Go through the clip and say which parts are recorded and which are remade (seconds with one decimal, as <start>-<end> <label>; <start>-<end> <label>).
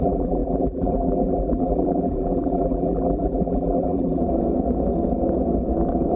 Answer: 0.0-4.2 remade; 4.2-6.2 recorded